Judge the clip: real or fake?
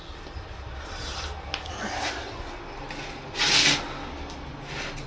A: real